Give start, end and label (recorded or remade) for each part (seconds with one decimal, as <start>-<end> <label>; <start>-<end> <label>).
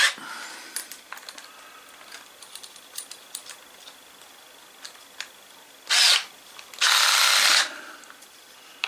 0.0-8.9 recorded